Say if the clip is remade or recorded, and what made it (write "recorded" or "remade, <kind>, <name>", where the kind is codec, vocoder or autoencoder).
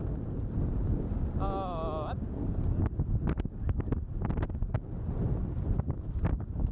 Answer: recorded